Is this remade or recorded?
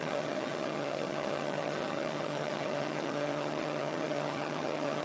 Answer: remade